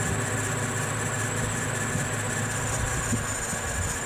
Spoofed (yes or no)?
no